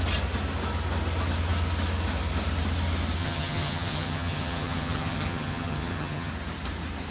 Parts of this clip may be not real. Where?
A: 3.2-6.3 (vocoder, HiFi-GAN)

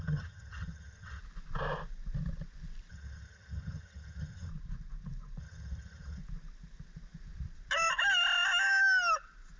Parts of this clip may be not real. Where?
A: 0.0-1.2 (vocoder, HiFi-GAN); 2.9-4.5; 5.4-6.2

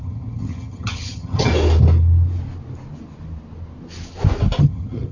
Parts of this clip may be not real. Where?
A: 0.0-1.5 (vocoder, HiFi-GAN); 4.6-5.1

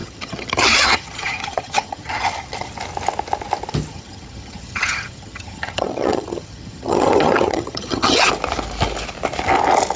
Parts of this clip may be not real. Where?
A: 0.0-2.7 (vocoder, HiFi-GAN); 3.9-8.3

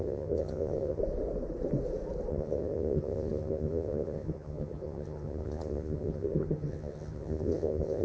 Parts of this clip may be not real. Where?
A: 0.0-1.0 (vocoder, HiFi-GAN); 2.3-8.0

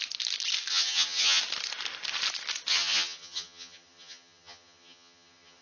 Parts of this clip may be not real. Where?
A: 0.7-1.4 (vocoder, HiFi-GAN); 2.7-5.6

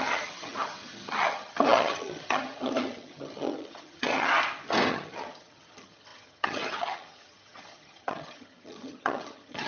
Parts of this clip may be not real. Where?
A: 0.0-4.3 (vocoder, HiFi-GAN); 4.9-9.7

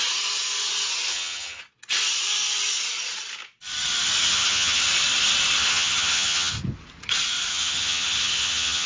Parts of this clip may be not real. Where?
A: 1.1-1.6 (vocoder, HiFi-GAN); 4.3-4.8; 5.6-6.5; 7.5-8.9